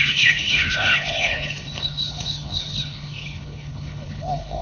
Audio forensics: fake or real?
fake